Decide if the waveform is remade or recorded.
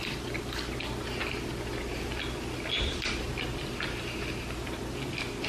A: recorded